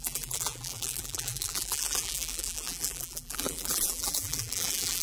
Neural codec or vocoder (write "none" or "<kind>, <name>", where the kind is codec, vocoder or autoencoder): vocoder, BigVGAN v2